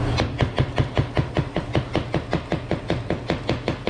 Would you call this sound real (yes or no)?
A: yes